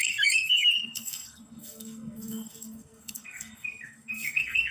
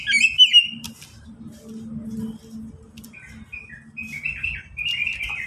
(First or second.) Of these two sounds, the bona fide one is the second